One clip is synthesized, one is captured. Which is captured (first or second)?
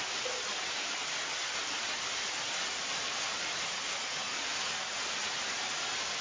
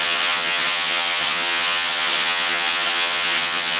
first